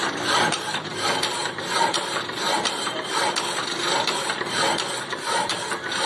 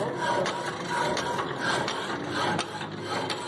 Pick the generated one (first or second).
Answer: first